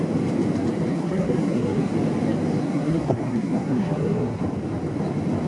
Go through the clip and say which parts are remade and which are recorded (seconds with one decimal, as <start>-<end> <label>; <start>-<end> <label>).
0.0-0.9 recorded; 0.9-1.9 remade; 1.9-2.6 recorded; 2.6-4.4 remade; 4.4-5.5 recorded

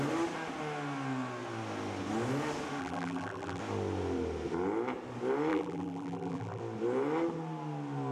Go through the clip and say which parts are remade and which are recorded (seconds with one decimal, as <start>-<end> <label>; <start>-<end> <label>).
0.0-2.8 recorded; 2.8-3.6 remade; 3.6-5.5 recorded; 5.5-6.6 remade; 6.6-8.1 recorded